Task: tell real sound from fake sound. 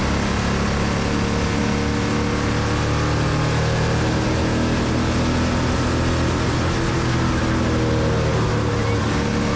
real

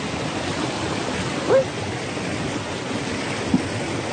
real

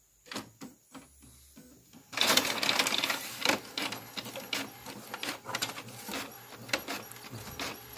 real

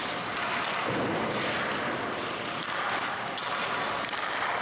real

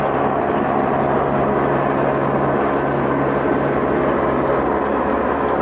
real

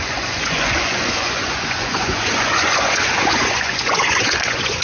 fake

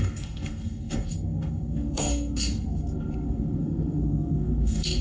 fake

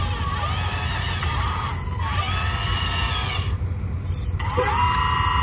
real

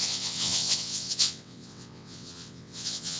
fake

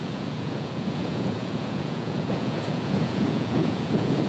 fake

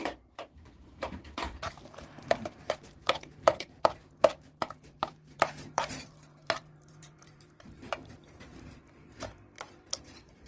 fake